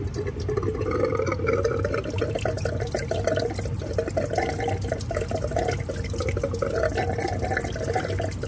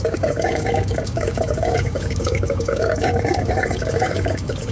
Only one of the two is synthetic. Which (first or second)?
second